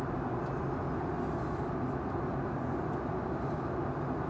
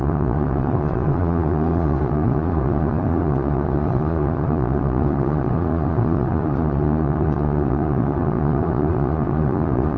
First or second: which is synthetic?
second